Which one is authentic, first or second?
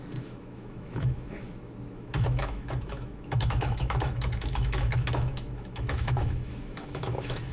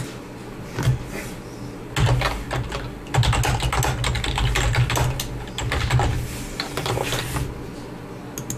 second